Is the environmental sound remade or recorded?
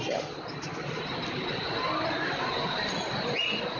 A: recorded